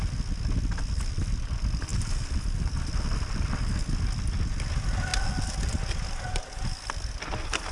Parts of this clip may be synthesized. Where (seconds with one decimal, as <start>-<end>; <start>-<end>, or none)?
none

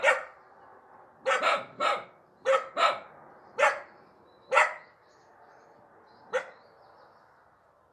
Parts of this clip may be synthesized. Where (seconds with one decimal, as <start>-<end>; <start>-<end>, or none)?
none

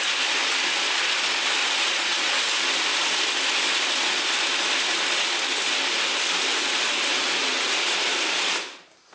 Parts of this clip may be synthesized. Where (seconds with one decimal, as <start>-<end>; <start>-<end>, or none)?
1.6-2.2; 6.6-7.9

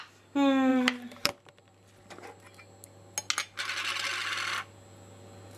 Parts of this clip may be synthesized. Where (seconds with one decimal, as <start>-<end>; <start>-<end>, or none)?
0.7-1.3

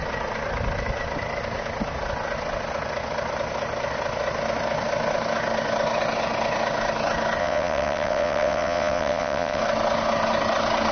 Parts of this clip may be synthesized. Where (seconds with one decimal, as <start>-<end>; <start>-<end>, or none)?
7.4-9.6

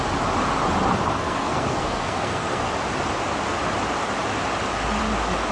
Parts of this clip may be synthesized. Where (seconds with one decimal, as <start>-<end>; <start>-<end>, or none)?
1.1-2.7